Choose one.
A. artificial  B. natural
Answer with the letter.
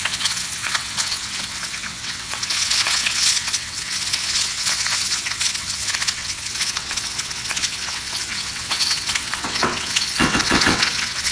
A